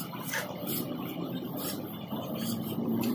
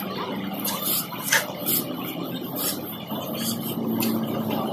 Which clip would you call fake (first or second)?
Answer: first